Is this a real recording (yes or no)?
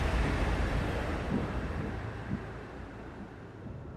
no